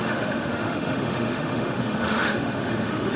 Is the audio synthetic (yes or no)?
yes